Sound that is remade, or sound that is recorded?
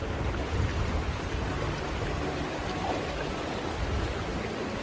recorded